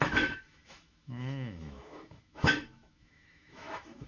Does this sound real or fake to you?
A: fake